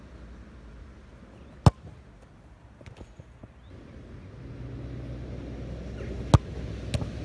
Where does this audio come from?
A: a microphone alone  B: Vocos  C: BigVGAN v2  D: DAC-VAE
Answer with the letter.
A